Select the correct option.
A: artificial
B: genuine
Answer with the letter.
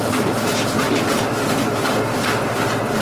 B